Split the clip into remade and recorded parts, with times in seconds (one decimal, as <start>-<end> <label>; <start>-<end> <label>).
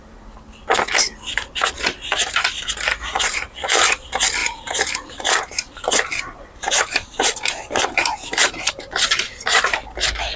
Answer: 0.0-2.2 recorded; 2.2-3.9 remade; 3.9-4.4 recorded; 4.4-8.7 remade; 8.7-10.4 recorded